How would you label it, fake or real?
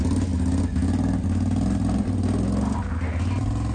real